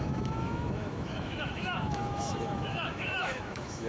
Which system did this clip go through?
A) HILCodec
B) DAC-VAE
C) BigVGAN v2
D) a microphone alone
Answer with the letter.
B